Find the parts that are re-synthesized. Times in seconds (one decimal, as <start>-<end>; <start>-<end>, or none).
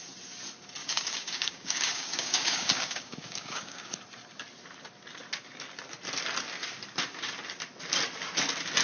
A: 0.8-3.9